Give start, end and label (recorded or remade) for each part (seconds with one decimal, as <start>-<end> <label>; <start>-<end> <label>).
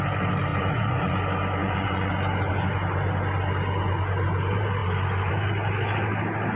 0.0-0.5 recorded; 0.5-1.1 remade; 1.1-1.6 recorded; 1.6-2.1 remade; 2.1-6.6 recorded